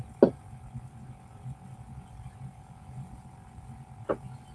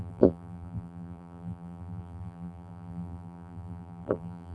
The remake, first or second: second